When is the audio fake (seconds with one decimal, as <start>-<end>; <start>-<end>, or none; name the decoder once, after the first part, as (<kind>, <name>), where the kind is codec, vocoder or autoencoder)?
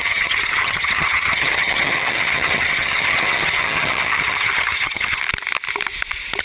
0.0-5.2 (vocoder, HiFi-GAN)